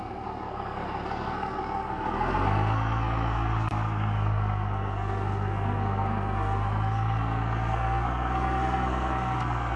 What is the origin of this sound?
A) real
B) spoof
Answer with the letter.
B